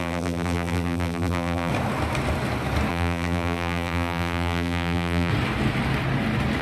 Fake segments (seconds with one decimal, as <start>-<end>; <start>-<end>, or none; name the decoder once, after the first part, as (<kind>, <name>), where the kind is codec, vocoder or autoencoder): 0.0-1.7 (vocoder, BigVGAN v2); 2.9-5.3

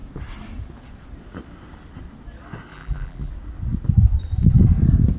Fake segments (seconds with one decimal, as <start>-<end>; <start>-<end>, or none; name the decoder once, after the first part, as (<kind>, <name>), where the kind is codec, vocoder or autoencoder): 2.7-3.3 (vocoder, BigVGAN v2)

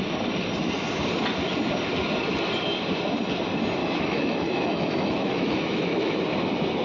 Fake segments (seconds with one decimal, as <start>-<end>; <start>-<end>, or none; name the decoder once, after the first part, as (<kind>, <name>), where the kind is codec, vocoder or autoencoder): 3.8-6.2 (autoencoder, DAC-VAE)

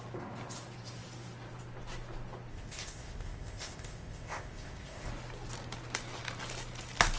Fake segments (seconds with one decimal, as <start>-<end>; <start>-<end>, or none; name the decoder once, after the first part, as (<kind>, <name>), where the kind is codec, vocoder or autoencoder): 2.5-5.1 (codec, ZipCodec)